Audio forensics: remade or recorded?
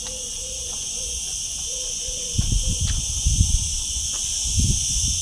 remade